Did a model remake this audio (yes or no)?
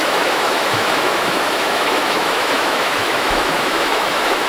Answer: yes